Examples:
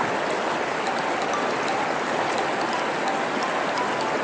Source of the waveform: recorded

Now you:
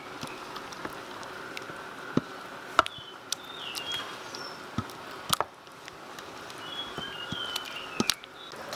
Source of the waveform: recorded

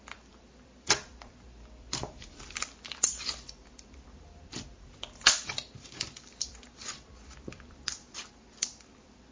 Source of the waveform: remade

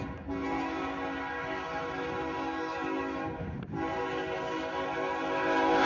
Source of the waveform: recorded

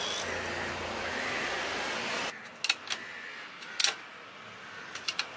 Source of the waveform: recorded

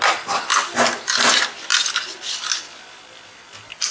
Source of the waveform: recorded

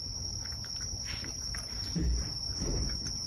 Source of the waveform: remade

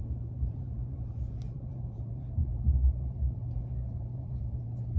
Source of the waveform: remade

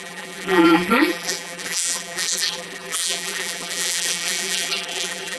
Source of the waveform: remade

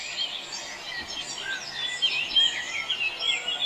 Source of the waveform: recorded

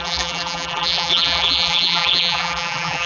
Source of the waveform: remade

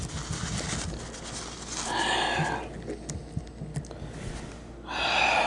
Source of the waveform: recorded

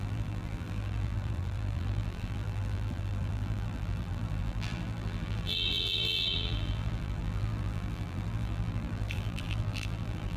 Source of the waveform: remade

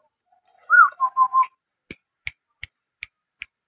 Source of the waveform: remade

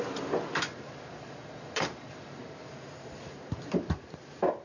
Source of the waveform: remade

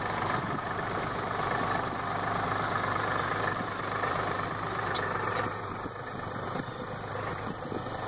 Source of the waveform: remade